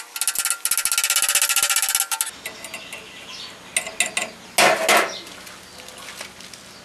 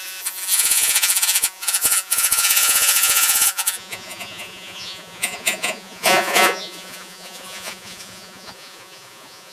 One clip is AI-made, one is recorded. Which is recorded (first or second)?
first